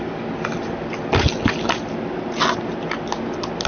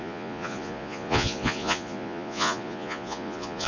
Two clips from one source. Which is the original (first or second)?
first